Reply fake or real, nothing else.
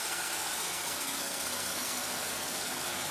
fake